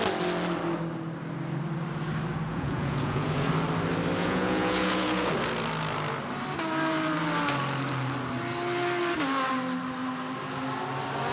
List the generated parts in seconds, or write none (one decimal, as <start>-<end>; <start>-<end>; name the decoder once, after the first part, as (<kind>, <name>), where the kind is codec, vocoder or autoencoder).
2.5-3.5 (vocoder, Vocos); 4.2-5.3